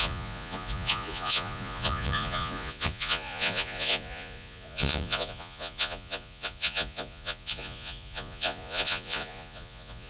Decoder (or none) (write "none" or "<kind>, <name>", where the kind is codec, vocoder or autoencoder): vocoder, Vocos